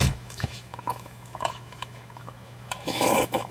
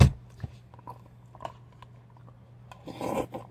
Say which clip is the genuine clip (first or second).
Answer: second